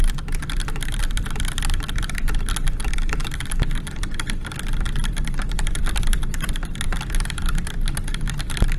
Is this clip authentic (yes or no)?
no